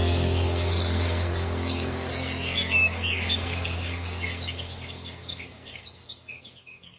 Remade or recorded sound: remade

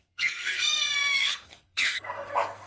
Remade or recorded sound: remade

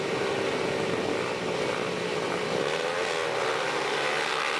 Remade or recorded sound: recorded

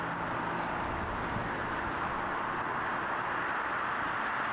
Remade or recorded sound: recorded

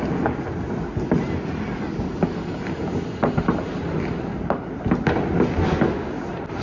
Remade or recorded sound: recorded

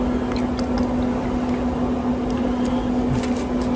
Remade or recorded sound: recorded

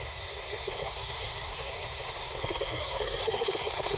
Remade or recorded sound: remade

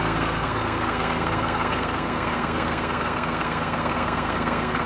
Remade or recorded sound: remade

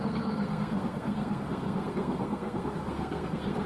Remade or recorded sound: remade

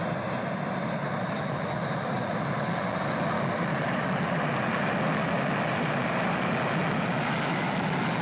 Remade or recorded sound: recorded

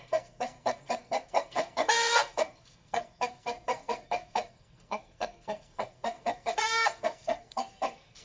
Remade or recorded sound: remade